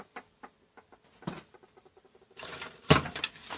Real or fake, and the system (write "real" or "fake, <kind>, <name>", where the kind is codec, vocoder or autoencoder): real